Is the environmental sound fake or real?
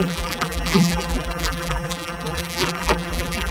fake